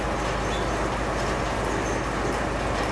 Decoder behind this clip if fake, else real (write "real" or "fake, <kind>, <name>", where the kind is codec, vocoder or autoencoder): real